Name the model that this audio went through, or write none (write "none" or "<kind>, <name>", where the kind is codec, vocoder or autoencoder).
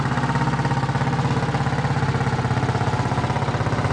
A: none